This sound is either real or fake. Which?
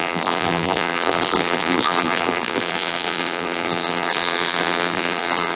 fake